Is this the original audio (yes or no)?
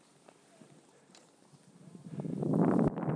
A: yes